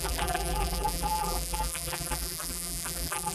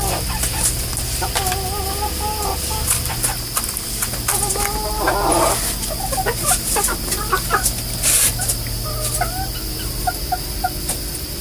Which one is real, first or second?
second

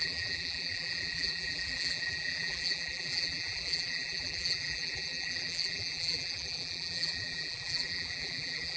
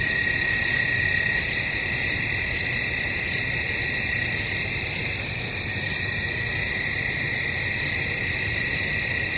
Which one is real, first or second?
second